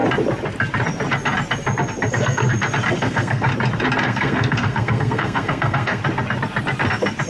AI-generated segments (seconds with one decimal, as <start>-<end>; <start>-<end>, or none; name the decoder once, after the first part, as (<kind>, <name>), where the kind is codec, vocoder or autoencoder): 2.1-2.5 (codec, SNAC); 3.0-3.5; 4.0-6.0